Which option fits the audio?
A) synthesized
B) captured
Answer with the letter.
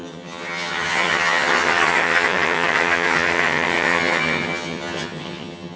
A